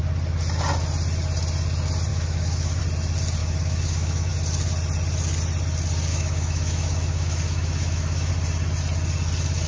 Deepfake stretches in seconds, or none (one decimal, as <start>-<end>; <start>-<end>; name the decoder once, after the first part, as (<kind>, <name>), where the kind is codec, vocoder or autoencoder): 2.1-2.8 (autoencoder, DAC-VAE); 3.4-4.3; 6.1-8.3